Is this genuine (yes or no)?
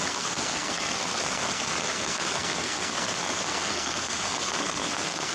no